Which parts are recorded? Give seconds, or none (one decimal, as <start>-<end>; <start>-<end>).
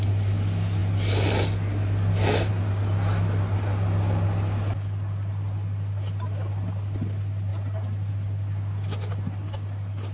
0.0-10.1